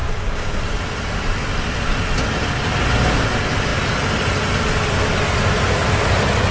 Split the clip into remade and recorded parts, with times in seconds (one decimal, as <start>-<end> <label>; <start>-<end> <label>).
0.0-0.6 remade; 0.6-6.5 recorded